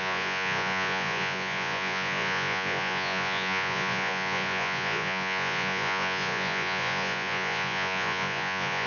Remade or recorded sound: remade